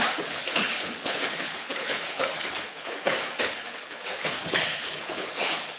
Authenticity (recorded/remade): remade